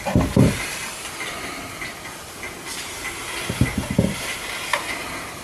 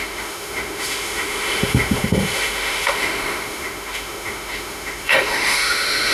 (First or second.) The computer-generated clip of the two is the second